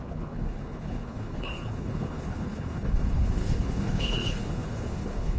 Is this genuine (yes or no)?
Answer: no